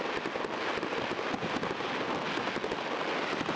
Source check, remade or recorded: recorded